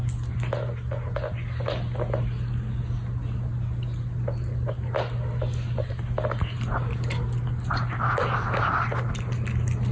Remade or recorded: recorded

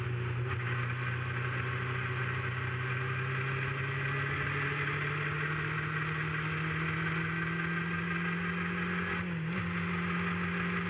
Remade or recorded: recorded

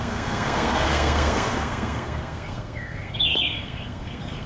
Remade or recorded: remade